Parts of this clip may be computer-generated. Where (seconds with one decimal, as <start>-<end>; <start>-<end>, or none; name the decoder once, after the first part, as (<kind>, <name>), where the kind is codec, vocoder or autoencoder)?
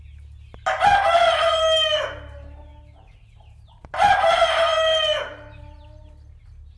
none